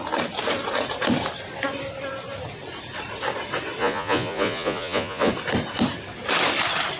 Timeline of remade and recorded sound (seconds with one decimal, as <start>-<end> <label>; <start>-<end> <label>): 0.0-3.8 recorded; 3.8-5.3 remade; 5.3-7.0 recorded